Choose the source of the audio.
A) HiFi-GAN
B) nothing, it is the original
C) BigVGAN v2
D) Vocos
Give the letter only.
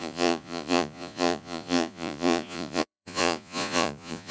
D